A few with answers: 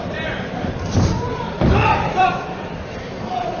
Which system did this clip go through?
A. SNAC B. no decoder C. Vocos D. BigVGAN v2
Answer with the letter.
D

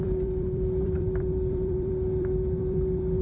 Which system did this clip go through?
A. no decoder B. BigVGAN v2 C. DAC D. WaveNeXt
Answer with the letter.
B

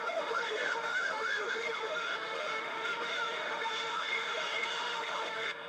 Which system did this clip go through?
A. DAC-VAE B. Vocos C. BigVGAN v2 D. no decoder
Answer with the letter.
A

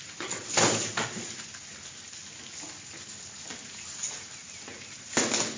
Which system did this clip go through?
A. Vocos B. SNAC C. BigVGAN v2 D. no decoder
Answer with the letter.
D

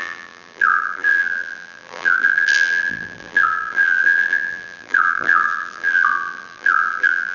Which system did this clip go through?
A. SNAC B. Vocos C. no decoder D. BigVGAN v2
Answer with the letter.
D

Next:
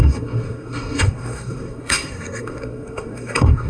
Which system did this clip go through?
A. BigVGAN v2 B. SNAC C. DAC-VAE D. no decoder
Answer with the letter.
B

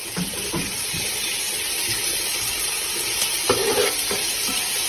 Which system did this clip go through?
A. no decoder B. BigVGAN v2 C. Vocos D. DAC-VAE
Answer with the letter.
B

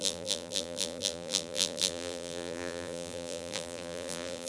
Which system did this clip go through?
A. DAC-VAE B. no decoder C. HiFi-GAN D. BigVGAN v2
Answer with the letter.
D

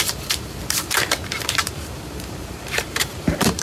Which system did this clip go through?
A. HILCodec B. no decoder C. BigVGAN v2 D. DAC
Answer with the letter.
C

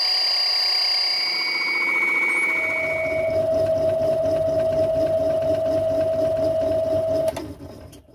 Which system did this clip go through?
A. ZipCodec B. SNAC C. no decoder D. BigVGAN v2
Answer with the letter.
C